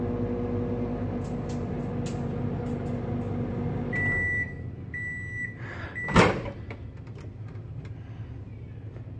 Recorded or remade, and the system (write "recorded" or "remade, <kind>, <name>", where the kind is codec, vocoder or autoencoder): recorded